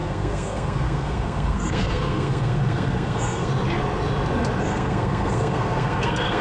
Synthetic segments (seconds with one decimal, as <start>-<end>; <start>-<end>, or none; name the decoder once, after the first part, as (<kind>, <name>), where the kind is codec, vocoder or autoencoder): 0.0-3.5 (codec, SNAC); 4.6-6.4